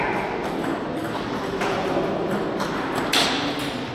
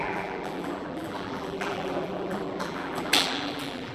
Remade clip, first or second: second